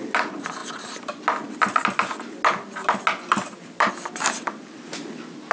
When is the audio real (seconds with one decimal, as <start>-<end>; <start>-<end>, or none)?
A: 0.0-5.5